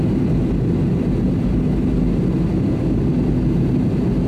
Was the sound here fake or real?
real